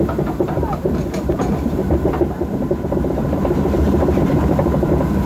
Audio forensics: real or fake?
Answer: fake